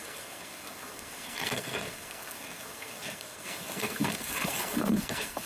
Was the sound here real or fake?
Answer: fake